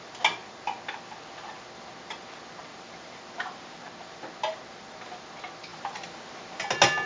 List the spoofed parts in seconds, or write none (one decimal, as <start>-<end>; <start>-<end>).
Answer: 2.7-3.9; 5.7-6.6